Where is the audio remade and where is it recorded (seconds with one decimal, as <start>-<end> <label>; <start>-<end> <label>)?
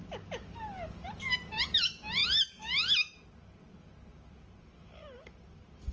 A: 0.0-2.2 remade; 2.2-4.6 recorded; 4.6-5.9 remade